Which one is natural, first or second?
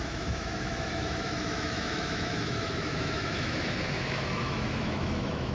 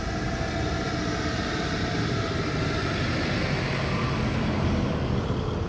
second